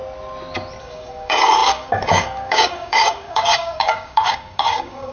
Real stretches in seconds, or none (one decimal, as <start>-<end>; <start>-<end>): 0.0-0.8

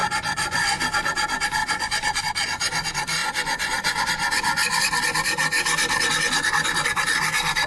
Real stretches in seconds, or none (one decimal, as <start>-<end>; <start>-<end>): 0.8-1.6; 2.2-3.2; 4.8-7.7

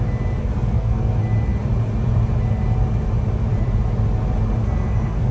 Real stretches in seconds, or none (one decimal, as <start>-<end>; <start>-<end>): 0.0-0.4; 1.1-4.6

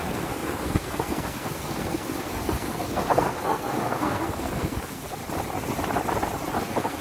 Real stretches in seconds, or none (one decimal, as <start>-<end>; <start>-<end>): 5.2-6.6